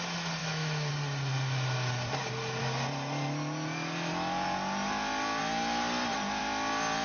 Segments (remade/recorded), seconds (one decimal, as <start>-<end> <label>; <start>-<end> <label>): 0.0-0.4 recorded; 0.4-0.9 remade; 0.9-7.0 recorded